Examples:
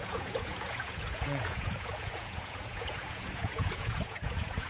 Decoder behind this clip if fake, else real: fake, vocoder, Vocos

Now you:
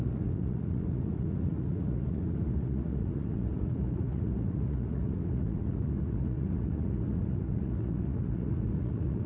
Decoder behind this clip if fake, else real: fake, vocoder, Vocos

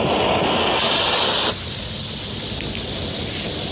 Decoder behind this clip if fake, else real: real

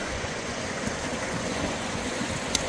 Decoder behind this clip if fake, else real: fake, vocoder, Vocos